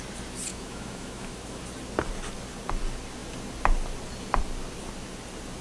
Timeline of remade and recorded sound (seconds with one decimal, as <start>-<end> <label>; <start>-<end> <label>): 0.0-0.5 recorded; 0.5-1.6 remade; 1.6-5.6 recorded